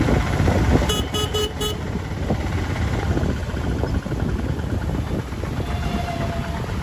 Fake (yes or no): no